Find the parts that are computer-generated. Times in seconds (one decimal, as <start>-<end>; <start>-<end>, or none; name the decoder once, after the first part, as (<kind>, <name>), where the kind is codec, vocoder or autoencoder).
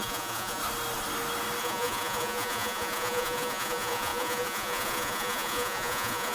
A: 0.0-0.6 (vocoder, Vocos); 1.6-6.3